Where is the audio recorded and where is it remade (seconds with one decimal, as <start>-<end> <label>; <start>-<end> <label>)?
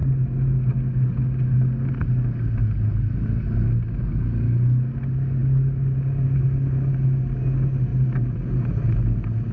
0.0-7.9 recorded; 7.9-8.5 remade; 8.5-9.5 recorded